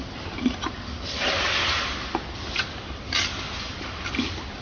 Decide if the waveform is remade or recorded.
recorded